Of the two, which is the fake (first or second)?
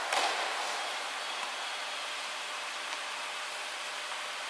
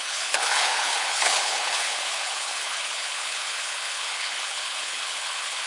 second